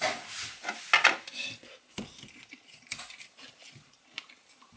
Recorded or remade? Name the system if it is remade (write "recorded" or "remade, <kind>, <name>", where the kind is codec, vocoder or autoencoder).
recorded